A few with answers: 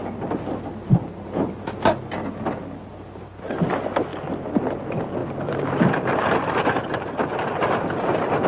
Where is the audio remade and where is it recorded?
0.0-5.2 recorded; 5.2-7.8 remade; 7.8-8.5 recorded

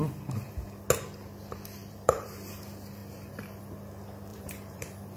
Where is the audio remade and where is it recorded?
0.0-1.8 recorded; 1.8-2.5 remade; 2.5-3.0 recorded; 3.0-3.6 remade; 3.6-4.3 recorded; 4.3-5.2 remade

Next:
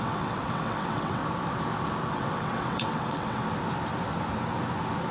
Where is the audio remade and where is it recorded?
0.0-1.2 remade; 1.2-2.1 recorded; 2.1-3.4 remade; 3.4-5.1 recorded

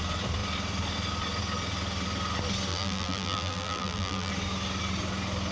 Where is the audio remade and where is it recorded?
0.0-2.7 recorded; 2.7-4.3 remade; 4.3-5.5 recorded

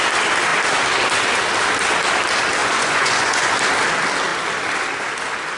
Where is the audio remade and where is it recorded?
0.0-2.6 recorded; 2.6-3.5 remade; 3.5-5.6 recorded

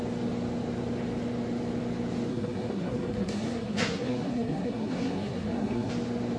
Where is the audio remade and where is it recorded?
0.0-2.3 recorded; 2.3-5.9 remade; 5.9-6.4 recorded

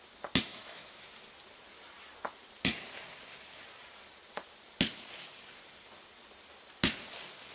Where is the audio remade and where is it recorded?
0.0-0.5 recorded; 0.5-1.0 remade; 1.0-7.5 recorded

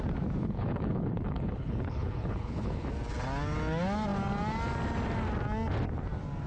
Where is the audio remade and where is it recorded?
0.0-0.4 recorded; 0.4-2.9 remade; 2.9-6.5 recorded